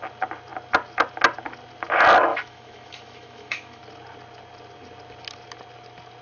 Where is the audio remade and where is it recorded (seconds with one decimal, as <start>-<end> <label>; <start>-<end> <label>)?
0.0-2.3 recorded; 2.3-3.8 remade; 3.8-6.2 recorded